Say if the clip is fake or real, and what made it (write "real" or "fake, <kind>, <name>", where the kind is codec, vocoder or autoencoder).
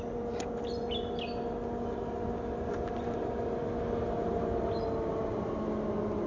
real